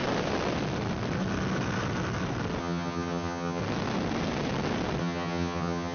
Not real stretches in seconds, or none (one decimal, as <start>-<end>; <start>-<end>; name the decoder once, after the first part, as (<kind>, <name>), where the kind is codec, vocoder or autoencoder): 2.6-3.6 (vocoder, HiFi-GAN); 5.0-5.9

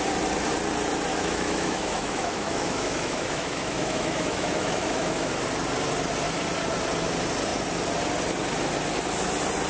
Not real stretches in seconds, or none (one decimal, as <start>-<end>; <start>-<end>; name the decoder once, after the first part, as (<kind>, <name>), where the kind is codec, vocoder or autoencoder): 1.1-5.3 (autoencoder, DAC-VAE)

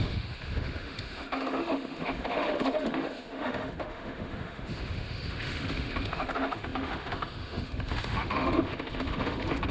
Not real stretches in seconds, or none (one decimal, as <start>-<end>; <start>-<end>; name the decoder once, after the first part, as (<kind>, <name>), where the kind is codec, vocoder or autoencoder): 0.0-9.7 (autoencoder, DAC-VAE)